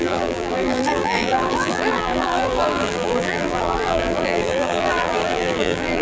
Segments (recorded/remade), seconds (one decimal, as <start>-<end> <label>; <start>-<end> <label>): 0.0-6.0 remade